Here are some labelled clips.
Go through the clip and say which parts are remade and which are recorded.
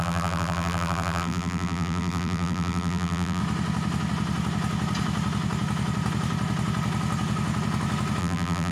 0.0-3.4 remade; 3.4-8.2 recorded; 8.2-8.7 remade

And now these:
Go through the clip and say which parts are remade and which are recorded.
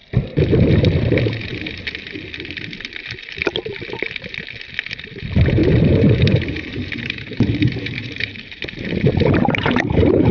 0.0-5.6 recorded; 5.6-10.3 remade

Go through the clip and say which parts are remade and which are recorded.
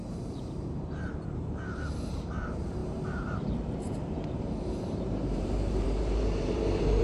0.0-7.0 remade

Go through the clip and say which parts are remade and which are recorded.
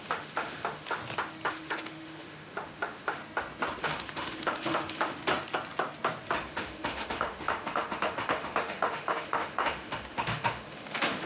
0.0-1.0 remade; 1.0-1.5 recorded; 1.5-3.2 remade; 3.2-3.8 recorded; 3.8-5.2 remade; 5.2-6.5 recorded; 6.5-11.3 remade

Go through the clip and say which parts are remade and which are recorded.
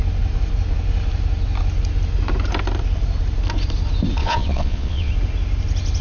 0.0-4.2 recorded; 4.2-5.1 remade; 5.1-6.0 recorded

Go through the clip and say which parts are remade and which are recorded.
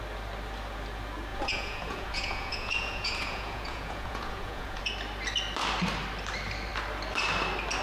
0.0-1.3 recorded; 1.3-4.8 remade; 4.8-7.8 recorded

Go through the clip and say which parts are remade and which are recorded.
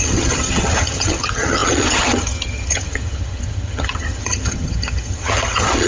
0.0-5.9 remade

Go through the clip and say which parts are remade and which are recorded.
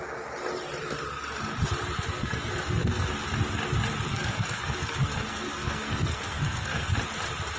0.0-2.1 recorded; 2.1-3.1 remade; 3.1-4.1 recorded; 4.1-6.9 remade; 6.9-7.6 recorded